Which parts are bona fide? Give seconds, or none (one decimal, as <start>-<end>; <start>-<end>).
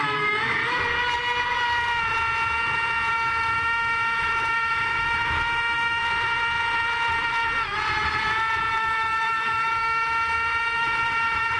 0.6-3.1; 6.0-8.8